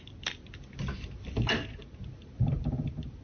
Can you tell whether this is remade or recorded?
recorded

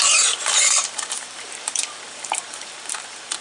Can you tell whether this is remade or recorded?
remade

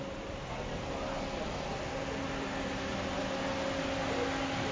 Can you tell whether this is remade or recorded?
recorded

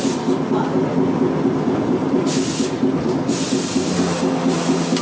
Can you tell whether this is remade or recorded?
recorded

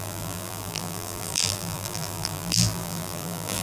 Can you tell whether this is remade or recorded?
remade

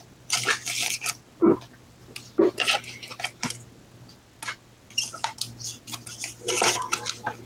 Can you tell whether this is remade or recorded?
recorded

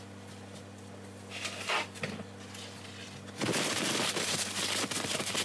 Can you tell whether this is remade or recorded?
recorded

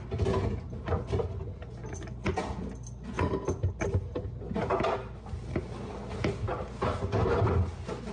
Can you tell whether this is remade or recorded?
recorded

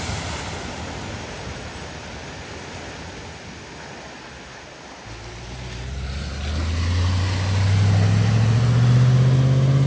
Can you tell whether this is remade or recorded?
recorded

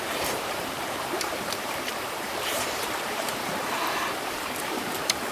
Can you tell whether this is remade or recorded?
remade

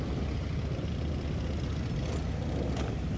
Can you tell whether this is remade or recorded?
recorded